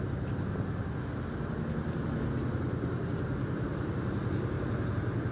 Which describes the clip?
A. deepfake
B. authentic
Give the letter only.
B